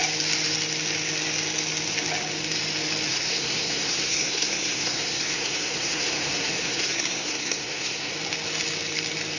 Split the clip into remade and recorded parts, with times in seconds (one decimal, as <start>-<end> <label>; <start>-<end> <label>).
0.0-3.1 recorded; 3.1-8.1 remade; 8.1-9.4 recorded